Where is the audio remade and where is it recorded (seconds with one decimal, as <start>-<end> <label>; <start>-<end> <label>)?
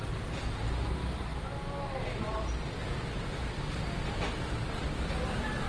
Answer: 0.0-5.7 recorded